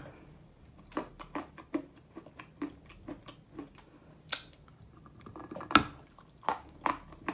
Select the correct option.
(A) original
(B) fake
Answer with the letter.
A